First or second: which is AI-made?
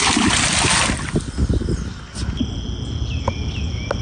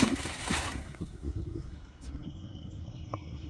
second